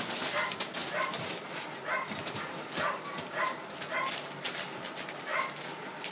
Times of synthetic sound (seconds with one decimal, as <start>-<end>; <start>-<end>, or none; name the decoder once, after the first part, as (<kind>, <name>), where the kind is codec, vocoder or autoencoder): none